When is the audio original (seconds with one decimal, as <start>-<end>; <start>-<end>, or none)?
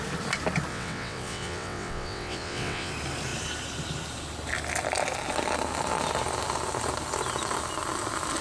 0.0-0.7; 2.9-8.4